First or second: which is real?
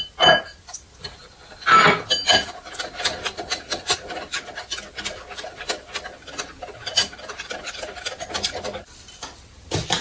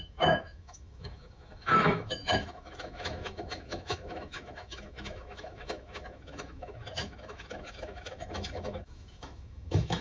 first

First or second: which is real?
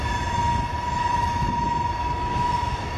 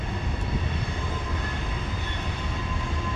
second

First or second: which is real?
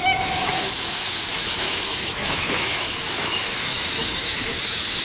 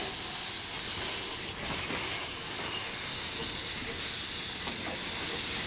second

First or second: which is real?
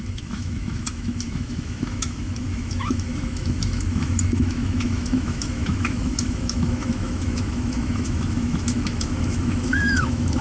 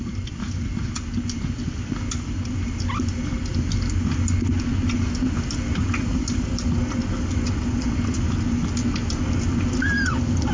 second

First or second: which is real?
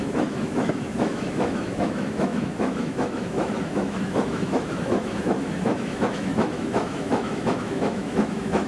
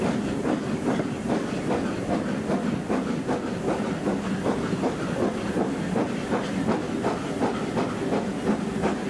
second